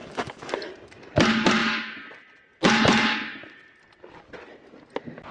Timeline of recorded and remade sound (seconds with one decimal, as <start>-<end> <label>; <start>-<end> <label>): 0.0-0.7 remade; 0.7-5.3 recorded